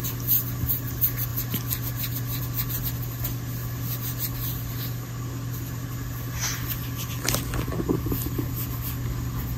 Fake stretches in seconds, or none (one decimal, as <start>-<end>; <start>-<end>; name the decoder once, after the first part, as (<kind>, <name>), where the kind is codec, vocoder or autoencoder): none